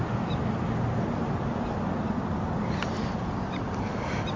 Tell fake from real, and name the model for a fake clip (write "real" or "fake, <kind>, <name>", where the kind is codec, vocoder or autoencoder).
real